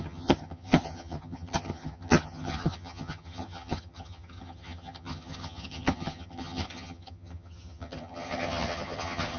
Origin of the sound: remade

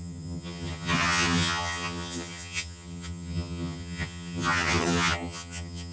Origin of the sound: remade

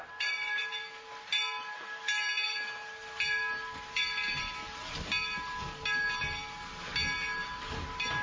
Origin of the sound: recorded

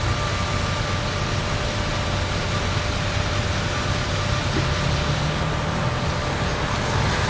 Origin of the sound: recorded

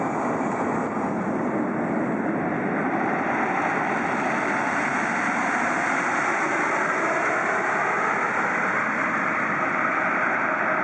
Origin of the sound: recorded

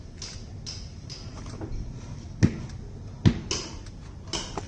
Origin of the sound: recorded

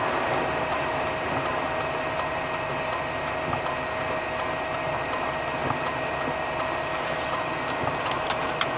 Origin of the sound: remade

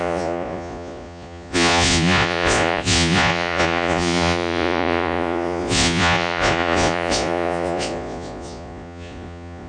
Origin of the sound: remade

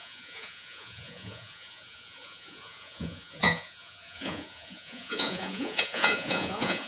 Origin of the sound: remade